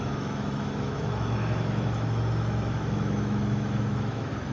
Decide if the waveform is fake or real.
fake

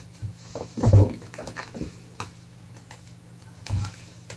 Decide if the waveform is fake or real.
fake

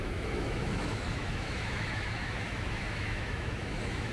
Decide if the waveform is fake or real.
fake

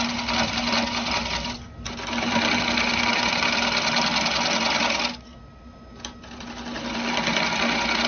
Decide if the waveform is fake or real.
real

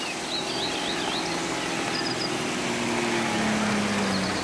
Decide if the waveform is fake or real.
real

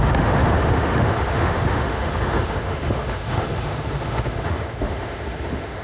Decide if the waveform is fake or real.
fake